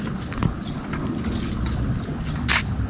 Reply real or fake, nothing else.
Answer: real